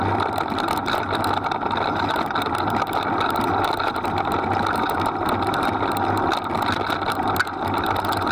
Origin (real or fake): real